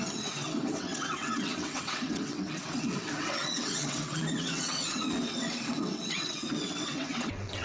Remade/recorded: remade